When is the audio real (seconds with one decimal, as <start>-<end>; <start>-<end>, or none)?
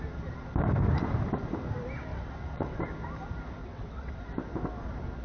0.0-2.1; 2.8-3.6; 4.2-5.2